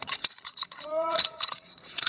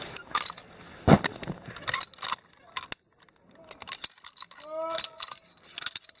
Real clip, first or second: second